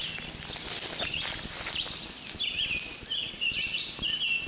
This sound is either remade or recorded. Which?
recorded